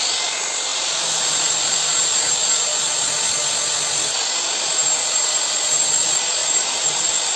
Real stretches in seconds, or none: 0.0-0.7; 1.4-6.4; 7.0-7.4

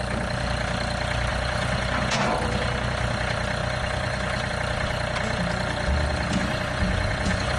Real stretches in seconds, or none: 0.0-1.3; 2.2-3.6; 4.5-6.4

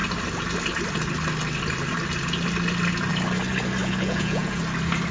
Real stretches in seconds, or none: 0.0-3.8; 4.6-5.1